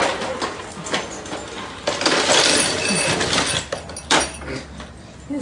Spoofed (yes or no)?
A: no